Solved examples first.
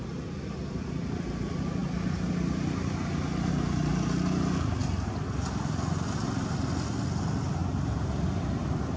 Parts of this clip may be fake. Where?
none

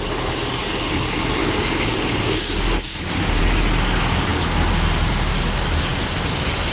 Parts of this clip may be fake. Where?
1.4-3.4 (codec, DAC)

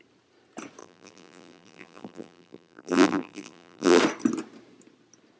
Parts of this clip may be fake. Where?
0.8-4.0 (vocoder, BigVGAN v2)

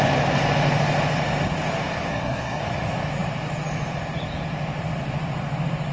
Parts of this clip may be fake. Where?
2.1-2.6 (codec, SNAC)

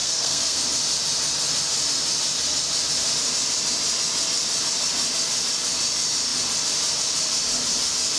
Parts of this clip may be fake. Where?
0.0-0.6 (codec, SNAC)

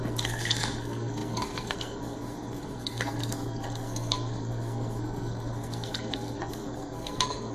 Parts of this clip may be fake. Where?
0.0-7.5 (codec, SNAC)